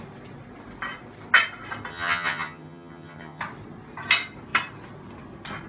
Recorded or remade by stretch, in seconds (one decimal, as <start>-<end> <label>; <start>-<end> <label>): 0.0-1.9 recorded; 1.9-3.4 remade; 3.4-5.7 recorded